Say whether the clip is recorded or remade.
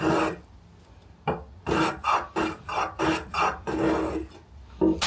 recorded